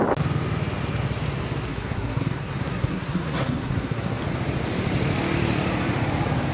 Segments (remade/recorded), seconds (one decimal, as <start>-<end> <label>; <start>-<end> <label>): 0.0-1.7 recorded; 1.7-4.2 remade; 4.2-6.5 recorded